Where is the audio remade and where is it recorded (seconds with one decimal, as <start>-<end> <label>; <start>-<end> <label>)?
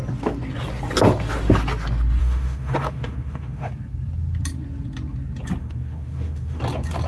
0.0-2.2 recorded; 2.2-3.7 remade; 3.7-5.6 recorded; 5.6-6.6 remade; 6.6-7.1 recorded